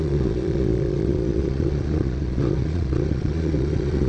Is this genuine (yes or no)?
no